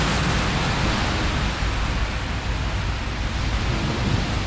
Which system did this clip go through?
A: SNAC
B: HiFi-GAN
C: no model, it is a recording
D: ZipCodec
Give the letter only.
C